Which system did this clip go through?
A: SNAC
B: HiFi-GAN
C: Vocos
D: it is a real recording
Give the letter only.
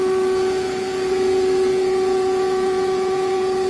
C